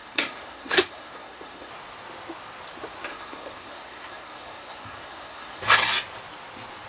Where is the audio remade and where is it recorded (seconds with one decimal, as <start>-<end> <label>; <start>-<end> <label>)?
0.0-1.7 remade; 1.7-3.1 recorded; 3.1-5.6 remade; 5.6-6.9 recorded